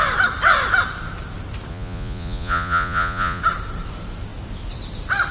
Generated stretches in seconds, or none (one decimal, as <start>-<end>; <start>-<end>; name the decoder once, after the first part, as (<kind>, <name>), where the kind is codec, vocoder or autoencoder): 1.7-3.4 (vocoder, Vocos)